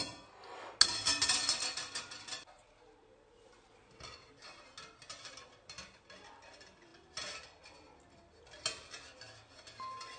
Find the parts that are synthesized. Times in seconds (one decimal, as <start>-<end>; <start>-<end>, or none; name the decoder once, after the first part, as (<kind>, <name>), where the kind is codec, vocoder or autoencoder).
none